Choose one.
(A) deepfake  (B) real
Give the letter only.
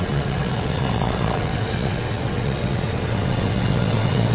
A